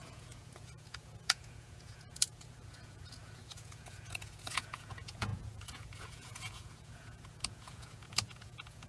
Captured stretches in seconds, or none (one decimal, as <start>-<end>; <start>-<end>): none